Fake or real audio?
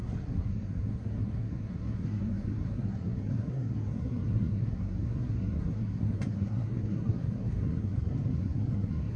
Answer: fake